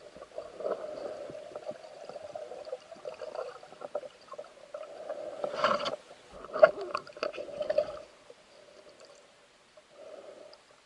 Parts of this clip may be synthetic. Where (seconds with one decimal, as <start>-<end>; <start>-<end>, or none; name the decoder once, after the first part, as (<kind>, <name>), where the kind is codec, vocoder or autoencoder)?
5.1-6.9 (vocoder, BigVGAN v2)